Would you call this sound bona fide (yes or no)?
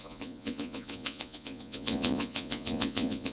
no